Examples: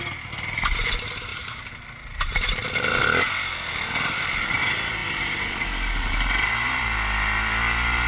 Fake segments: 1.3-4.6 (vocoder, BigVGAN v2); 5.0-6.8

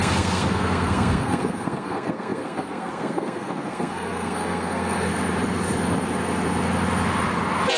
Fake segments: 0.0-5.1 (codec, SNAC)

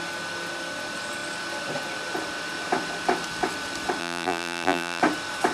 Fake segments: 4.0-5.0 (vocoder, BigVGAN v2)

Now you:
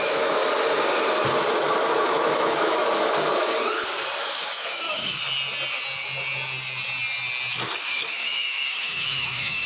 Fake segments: 0.0-0.4 (autoencoder, DAC-VAE); 1.6-2.8; 4.2-5.2; 7.8-9.7

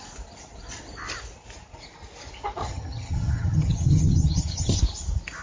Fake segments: 2.6-4.8 (vocoder, HiFi-GAN)

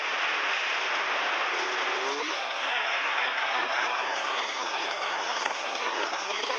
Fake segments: 2.2-6.6 (codec, SNAC)